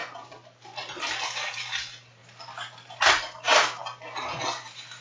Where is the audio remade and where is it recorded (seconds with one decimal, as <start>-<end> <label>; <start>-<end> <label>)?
0.0-2.2 remade; 2.2-3.0 recorded; 3.0-3.8 remade; 3.8-4.5 recorded; 4.5-5.0 remade